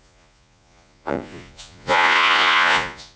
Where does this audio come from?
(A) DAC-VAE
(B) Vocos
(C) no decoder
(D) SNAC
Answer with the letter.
B